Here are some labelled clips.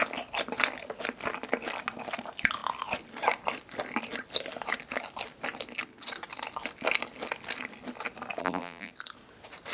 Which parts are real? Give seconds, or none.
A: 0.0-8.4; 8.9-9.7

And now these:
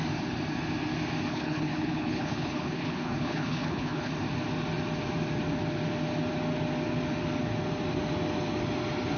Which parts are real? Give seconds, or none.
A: 0.0-1.3; 4.1-9.2

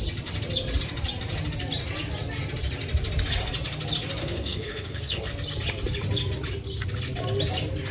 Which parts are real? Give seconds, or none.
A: 0.0-4.2; 5.3-7.9